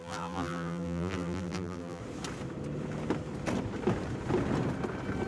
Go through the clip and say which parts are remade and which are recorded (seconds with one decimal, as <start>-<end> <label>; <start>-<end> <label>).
0.0-2.0 remade; 2.0-5.3 recorded